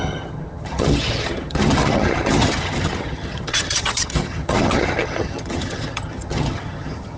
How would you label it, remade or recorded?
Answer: remade